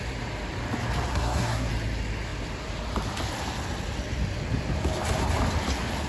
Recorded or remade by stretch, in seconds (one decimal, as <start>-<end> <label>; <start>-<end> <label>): 0.0-1.1 recorded; 1.1-1.7 remade; 1.7-6.1 recorded